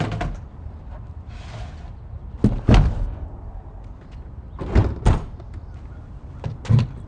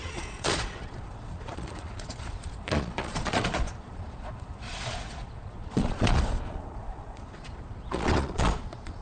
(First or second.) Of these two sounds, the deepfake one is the second